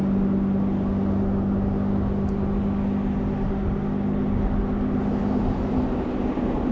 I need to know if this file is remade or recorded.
recorded